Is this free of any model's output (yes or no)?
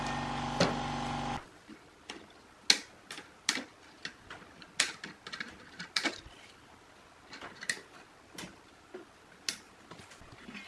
yes